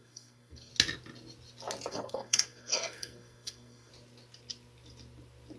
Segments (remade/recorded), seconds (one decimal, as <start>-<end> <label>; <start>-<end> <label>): 0.0-0.7 remade; 0.7-1.9 recorded; 1.9-3.9 remade; 3.9-5.6 recorded